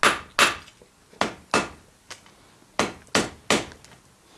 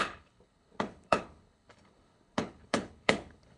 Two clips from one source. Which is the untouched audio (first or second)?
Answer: first